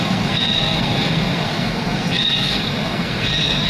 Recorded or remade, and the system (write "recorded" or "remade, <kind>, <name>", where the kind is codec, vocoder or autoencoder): remade, codec, SNAC